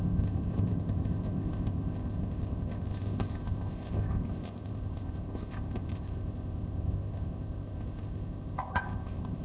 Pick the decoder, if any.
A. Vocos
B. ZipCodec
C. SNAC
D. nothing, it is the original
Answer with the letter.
B